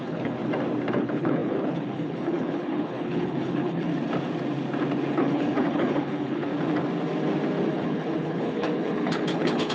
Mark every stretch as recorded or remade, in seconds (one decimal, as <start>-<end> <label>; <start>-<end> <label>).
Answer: 0.0-0.4 remade; 0.4-0.9 recorded; 0.9-3.9 remade; 3.9-5.1 recorded; 5.1-6.5 remade; 6.5-7.7 recorded; 7.7-9.7 remade